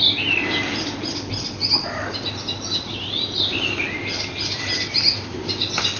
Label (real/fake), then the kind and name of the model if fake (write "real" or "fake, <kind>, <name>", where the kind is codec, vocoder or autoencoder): real